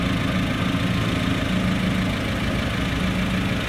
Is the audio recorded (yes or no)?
yes